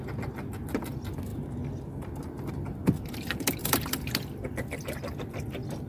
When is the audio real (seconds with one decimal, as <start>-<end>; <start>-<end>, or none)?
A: 0.0-3.6; 4.4-5.9